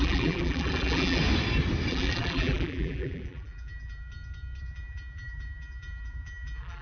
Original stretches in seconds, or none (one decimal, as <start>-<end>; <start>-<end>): 1.2-1.9; 4.1-4.6